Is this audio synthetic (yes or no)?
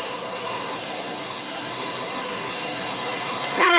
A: yes